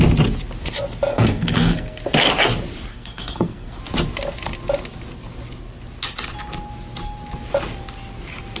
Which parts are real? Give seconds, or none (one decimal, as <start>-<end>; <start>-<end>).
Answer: 0.0-1.1; 2.0-2.9; 3.8-8.6